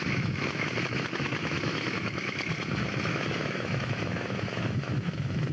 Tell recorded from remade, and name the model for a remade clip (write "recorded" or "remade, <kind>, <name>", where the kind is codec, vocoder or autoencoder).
remade, autoencoder, DAC-VAE